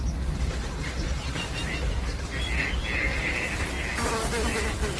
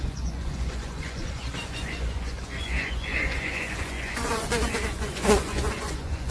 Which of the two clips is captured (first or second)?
first